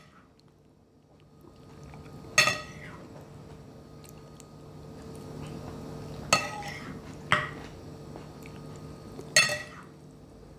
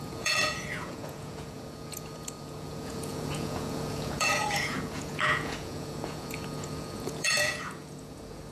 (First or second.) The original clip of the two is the first